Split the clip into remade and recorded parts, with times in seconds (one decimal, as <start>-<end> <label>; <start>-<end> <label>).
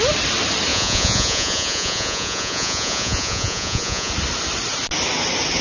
0.0-0.7 recorded; 0.7-4.1 remade; 4.1-5.6 recorded